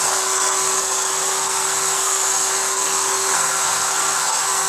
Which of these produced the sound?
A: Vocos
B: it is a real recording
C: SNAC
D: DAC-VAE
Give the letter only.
C